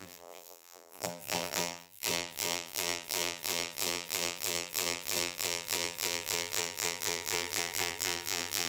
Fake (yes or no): yes